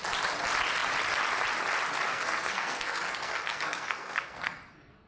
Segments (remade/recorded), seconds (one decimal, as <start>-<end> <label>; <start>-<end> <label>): 0.0-2.1 recorded; 2.1-5.1 remade